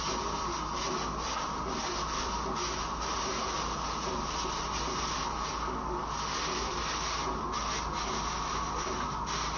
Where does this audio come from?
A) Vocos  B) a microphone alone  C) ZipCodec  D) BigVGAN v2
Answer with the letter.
B